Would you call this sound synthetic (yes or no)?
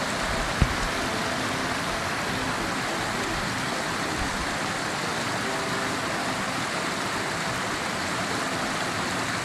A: no